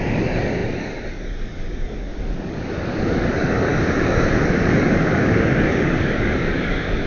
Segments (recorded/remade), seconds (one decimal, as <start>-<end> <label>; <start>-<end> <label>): 0.0-7.1 remade